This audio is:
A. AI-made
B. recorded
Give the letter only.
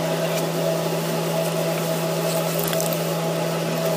B